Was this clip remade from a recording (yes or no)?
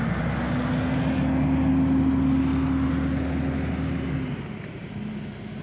no